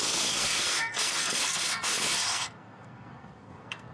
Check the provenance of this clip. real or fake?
fake